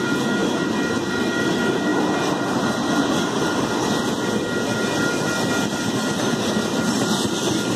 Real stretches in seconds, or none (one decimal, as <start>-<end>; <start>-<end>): none